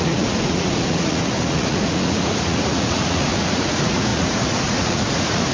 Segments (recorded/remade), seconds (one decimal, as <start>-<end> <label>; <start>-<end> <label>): 0.0-5.5 remade